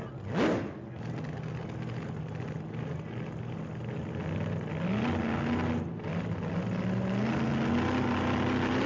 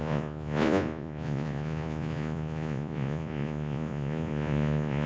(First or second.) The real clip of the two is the first